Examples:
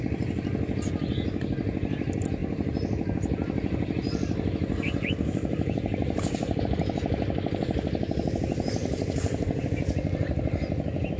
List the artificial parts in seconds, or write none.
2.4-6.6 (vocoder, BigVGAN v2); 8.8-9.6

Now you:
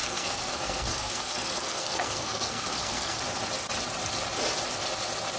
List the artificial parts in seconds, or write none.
0.0-3.2 (codec, SNAC)

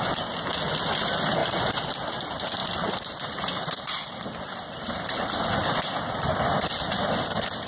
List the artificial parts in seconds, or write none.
1.4-2.0 (vocoder, BigVGAN v2); 2.6-5.4

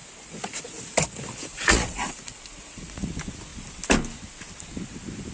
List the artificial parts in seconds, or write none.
1.5-3.1 (vocoder, Vocos)

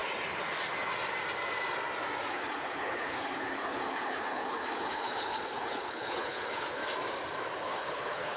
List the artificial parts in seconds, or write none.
2.3-6.8 (codec, HILCodec); 7.6-8.4

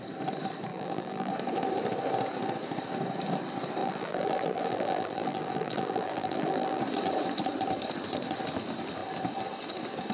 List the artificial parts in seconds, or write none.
0.7-1.3 (vocoder, BigVGAN v2); 3.8-6.8

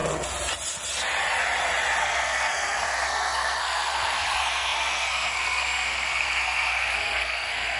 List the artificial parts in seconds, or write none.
2.0-7.8 (codec, SNAC)